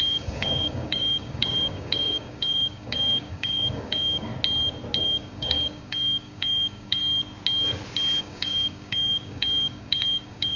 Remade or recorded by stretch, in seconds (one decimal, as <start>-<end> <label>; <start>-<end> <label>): 0.0-4.3 remade; 4.3-5.0 recorded; 5.0-7.0 remade; 7.0-8.2 recorded; 8.2-10.6 remade